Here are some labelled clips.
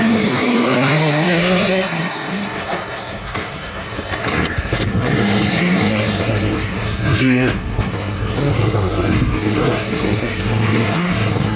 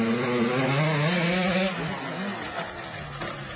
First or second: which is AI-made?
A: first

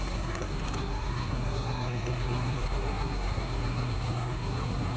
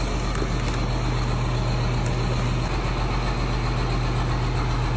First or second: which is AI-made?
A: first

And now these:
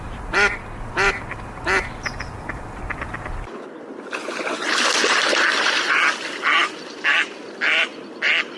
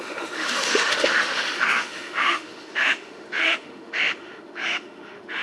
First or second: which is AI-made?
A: second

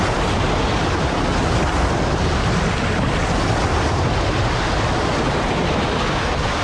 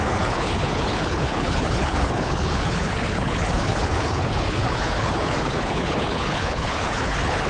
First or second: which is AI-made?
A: second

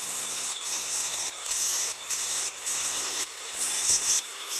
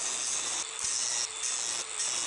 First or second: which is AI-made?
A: first